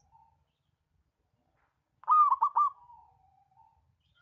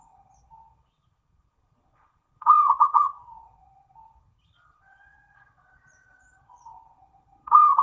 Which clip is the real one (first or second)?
first